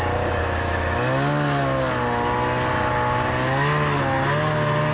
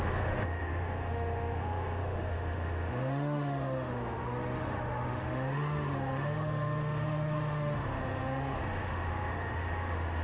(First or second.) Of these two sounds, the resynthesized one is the second